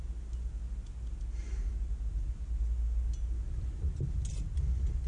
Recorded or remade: recorded